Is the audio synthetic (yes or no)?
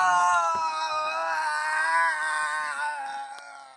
no